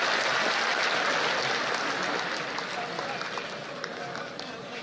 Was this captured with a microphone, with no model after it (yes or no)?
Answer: yes